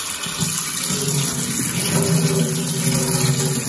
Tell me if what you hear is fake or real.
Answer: real